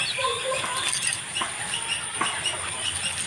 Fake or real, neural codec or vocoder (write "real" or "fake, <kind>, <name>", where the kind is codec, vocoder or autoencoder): real